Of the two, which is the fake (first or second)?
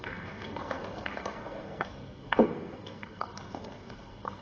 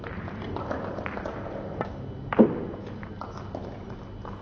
first